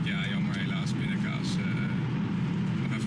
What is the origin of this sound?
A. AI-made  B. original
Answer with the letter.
B